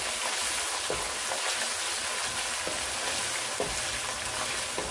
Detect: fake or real real